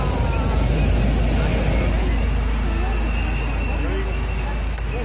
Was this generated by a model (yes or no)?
no